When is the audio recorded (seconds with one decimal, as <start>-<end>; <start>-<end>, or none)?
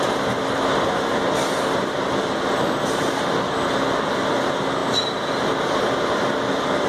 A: 0.0-6.9